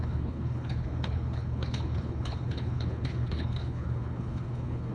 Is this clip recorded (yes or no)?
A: no